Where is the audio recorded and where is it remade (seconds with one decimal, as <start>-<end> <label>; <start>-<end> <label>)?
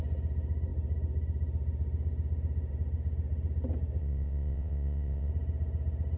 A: 0.0-4.0 recorded; 4.0-5.3 remade; 5.3-6.2 recorded